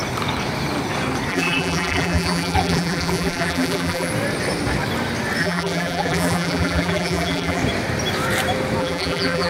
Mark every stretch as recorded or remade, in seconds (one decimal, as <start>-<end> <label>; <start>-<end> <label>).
0.0-1.3 recorded; 1.3-4.1 remade; 4.1-5.4 recorded; 5.4-7.6 remade; 7.6-8.8 recorded; 8.8-9.5 remade